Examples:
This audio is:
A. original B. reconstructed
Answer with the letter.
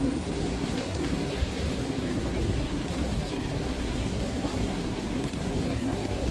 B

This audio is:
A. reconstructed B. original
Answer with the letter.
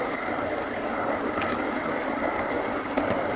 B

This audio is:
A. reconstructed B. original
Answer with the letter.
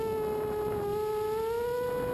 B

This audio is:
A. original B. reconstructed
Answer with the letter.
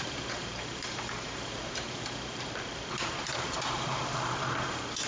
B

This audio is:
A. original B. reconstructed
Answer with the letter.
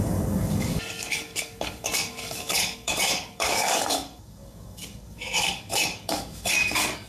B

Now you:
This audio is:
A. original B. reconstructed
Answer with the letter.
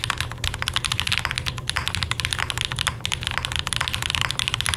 A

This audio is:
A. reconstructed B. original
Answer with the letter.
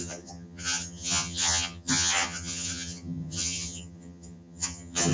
A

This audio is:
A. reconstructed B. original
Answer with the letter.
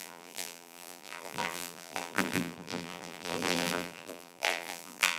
A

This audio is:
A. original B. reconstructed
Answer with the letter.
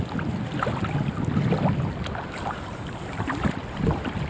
A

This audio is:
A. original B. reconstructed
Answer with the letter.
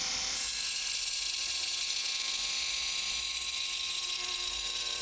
B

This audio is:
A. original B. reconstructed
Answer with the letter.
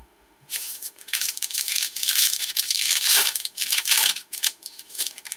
B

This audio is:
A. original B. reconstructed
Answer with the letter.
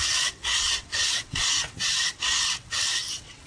B